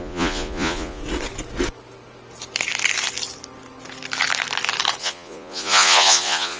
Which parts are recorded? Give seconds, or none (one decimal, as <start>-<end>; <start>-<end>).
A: 1.0-5.0